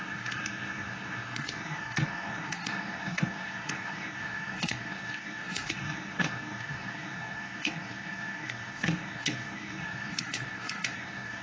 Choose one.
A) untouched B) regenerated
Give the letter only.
B